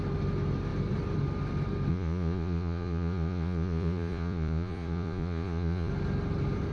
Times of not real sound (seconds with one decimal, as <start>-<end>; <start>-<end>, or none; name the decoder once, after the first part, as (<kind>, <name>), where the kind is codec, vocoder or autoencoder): 1.9-5.9 (vocoder, Vocos)